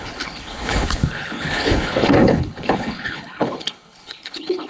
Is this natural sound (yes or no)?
no